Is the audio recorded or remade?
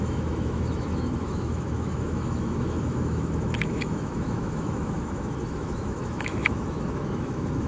remade